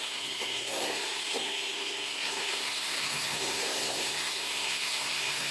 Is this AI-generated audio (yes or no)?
yes